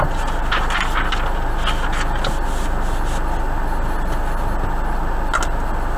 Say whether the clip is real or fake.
real